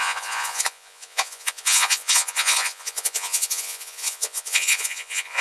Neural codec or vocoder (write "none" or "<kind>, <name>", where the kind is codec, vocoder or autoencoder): vocoder, Vocos